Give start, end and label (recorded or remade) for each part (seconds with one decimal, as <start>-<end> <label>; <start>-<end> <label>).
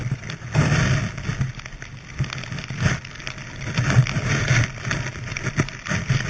0.0-6.3 recorded